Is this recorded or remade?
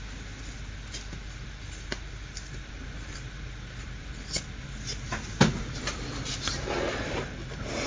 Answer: recorded